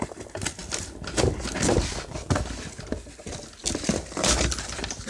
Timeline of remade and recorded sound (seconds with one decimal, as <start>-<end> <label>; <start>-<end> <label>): 0.0-5.1 recorded